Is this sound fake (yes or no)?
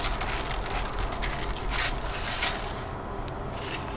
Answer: no